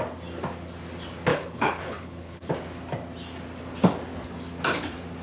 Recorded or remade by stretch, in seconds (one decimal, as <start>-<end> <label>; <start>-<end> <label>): 0.0-1.3 recorded; 1.3-2.5 remade; 2.5-5.2 recorded